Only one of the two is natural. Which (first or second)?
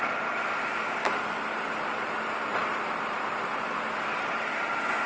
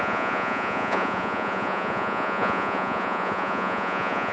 first